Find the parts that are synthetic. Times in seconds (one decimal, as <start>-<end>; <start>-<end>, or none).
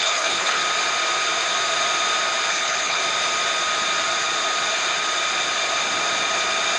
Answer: 0.0-0.6; 2.5-3.0